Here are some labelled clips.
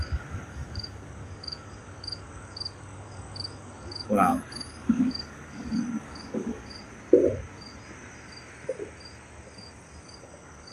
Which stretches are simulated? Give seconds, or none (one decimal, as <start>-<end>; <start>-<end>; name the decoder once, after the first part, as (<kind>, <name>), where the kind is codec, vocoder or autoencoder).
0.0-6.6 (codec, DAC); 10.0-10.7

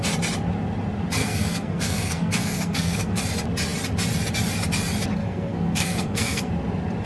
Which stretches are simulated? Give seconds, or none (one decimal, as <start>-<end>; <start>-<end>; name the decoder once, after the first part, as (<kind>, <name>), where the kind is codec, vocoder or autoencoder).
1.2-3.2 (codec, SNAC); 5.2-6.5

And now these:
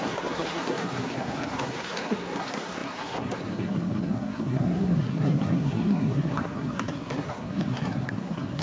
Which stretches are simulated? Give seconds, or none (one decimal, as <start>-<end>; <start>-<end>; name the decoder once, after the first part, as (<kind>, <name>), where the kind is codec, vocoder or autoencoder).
0.0-8.6 (codec, SNAC)

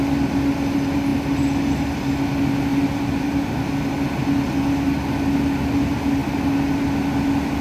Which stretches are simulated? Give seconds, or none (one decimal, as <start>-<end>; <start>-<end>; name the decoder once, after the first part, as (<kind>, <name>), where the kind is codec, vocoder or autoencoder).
2.7-3.6 (vocoder, BigVGAN v2)

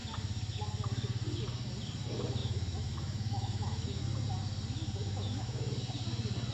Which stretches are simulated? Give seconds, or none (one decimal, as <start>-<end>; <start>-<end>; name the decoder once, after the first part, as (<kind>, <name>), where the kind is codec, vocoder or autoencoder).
2.4-4.0 (autoencoder, DAC-VAE); 5.0-5.7

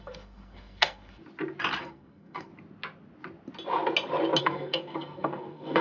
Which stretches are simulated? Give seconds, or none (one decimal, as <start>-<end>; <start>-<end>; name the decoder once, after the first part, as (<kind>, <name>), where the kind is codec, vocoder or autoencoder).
0.0-1.2 (codec, SNAC); 1.8-2.5; 4.4-5.8

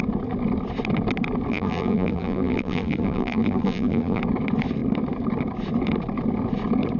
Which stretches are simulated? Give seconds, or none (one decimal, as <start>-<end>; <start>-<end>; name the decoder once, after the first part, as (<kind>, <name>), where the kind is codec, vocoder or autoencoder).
1.5-4.2 (vocoder, BigVGAN v2)